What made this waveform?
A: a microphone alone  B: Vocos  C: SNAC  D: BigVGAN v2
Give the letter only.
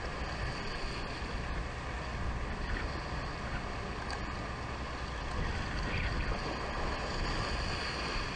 A